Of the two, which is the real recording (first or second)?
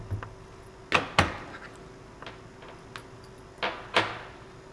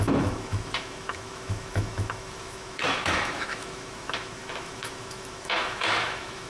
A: first